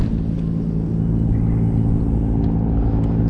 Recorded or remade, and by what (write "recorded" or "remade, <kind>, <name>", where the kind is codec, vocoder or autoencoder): recorded